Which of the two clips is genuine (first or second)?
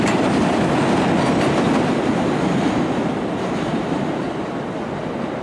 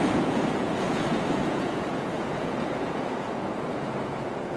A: first